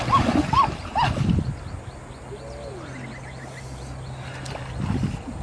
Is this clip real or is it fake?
real